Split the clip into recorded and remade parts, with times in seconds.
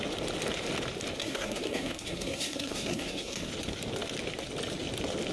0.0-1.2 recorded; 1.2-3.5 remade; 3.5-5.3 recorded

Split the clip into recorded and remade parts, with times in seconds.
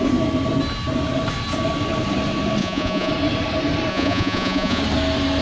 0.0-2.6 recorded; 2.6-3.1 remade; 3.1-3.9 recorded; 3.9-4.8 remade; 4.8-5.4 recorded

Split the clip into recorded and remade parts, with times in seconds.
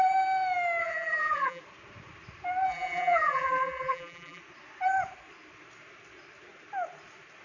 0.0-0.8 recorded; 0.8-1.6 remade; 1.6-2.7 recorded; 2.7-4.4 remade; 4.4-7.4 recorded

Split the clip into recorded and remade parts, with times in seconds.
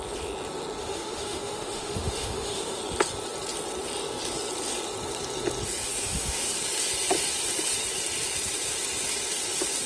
0.0-0.8 recorded; 0.8-2.8 remade; 2.8-6.0 recorded; 6.0-6.5 remade; 6.5-9.9 recorded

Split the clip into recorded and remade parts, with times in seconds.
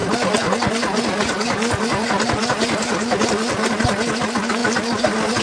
0.0-5.4 recorded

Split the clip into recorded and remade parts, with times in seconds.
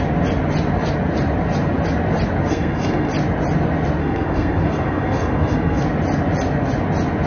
0.0-2.5 recorded; 2.5-3.1 remade; 3.1-4.0 recorded; 4.0-5.8 remade; 5.8-7.3 recorded